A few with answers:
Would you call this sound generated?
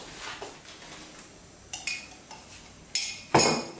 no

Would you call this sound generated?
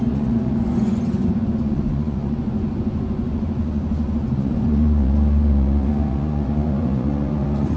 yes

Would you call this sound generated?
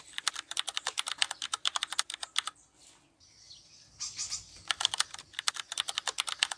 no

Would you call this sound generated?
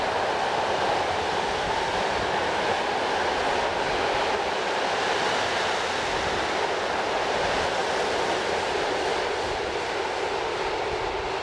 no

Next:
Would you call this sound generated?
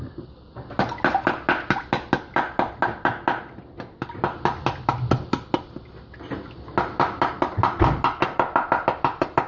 no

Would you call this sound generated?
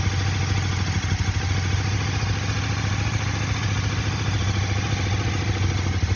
no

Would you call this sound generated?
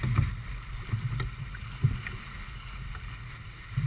no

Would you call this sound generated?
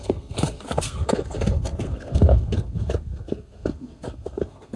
yes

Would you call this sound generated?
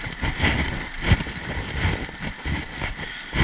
no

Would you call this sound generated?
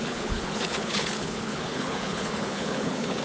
yes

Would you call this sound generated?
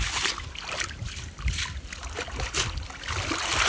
no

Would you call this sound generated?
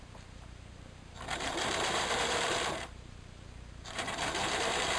yes